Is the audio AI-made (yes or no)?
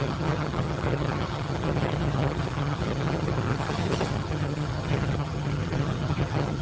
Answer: yes